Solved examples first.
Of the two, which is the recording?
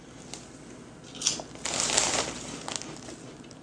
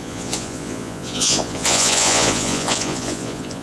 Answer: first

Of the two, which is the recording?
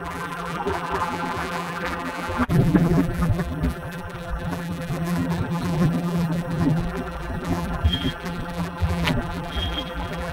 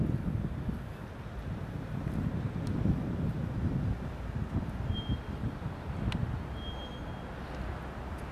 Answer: second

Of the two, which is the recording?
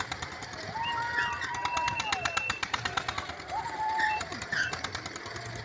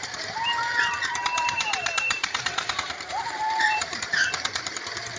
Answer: first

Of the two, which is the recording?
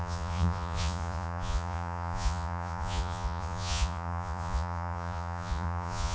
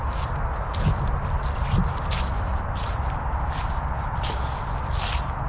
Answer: second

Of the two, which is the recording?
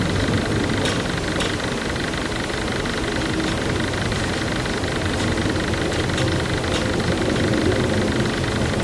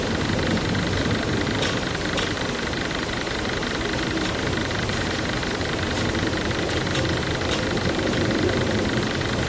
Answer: first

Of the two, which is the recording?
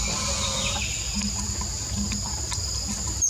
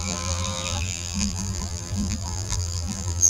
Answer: first